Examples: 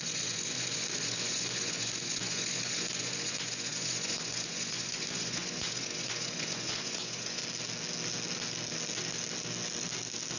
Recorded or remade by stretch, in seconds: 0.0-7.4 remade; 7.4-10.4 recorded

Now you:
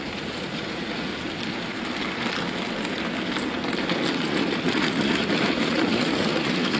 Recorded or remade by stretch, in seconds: 0.0-1.1 remade; 1.1-4.1 recorded; 4.1-6.8 remade